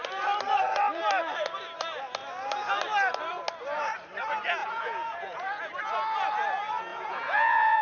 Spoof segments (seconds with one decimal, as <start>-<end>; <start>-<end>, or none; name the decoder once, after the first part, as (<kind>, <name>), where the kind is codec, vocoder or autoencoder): 4.6-5.7 (vocoder, Vocos); 6.9-7.8